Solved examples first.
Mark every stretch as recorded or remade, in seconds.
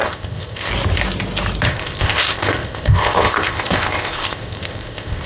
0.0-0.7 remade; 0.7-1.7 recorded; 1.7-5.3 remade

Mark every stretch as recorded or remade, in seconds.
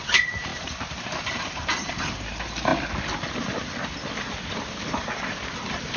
0.0-2.7 remade; 2.7-4.5 recorded; 4.5-6.0 remade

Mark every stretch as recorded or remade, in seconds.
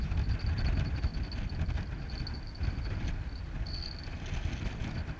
0.0-5.2 recorded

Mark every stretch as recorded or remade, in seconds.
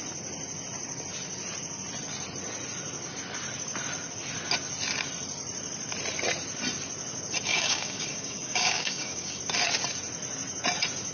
0.0-7.5 recorded; 7.5-9.4 remade; 9.4-11.1 recorded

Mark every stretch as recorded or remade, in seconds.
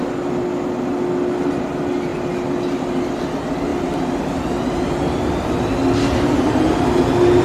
0.0-3.7 recorded; 3.7-5.5 remade; 5.5-7.4 recorded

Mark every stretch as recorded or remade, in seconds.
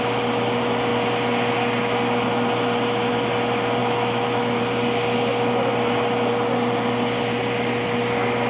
0.0-3.8 recorded; 3.8-4.6 remade; 4.6-8.5 recorded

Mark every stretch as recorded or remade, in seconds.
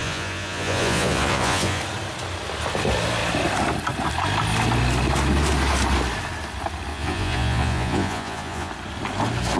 0.0-1.8 remade; 1.8-6.9 recorded; 6.9-8.7 remade; 8.7-9.6 recorded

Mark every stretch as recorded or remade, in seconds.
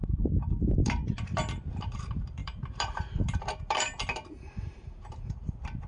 0.0-0.6 recorded; 0.6-5.9 remade